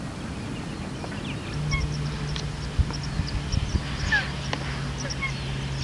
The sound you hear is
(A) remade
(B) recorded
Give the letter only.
B